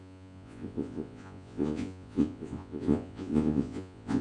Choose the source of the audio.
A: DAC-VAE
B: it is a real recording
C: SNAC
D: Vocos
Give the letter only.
D